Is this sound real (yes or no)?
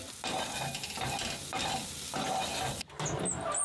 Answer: yes